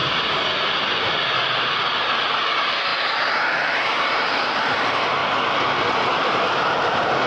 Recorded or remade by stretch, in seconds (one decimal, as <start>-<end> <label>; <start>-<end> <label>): 0.0-5.2 remade; 5.2-6.1 recorded; 6.1-7.3 remade